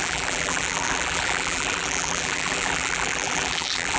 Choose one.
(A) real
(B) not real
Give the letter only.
B